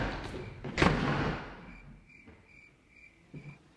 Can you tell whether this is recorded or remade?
recorded